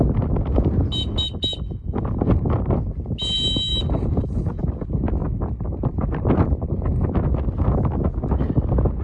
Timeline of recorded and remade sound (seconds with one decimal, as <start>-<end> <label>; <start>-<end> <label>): 0.0-3.7 recorded; 3.7-4.6 remade; 4.6-5.2 recorded; 5.2-6.3 remade; 6.3-9.0 recorded